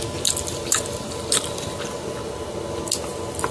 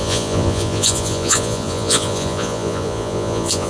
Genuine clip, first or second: first